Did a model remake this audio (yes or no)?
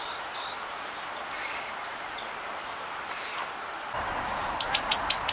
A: no